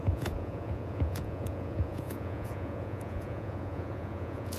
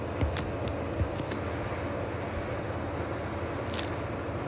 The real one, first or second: second